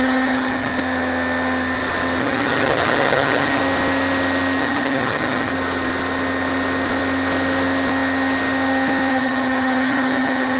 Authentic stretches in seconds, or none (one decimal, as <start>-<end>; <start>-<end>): 0.7-2.2; 3.6-4.6; 5.5-9.1